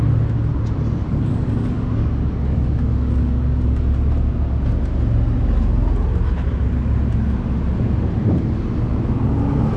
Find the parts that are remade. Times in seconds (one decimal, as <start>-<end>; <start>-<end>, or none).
1.0-4.1